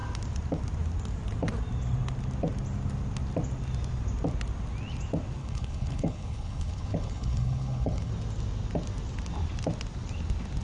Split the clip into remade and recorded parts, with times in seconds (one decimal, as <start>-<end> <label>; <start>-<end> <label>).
0.0-5.4 recorded; 5.4-8.1 remade; 8.1-10.6 recorded